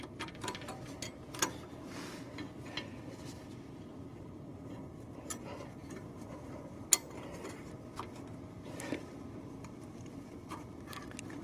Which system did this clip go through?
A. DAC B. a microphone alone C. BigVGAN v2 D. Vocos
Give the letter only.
B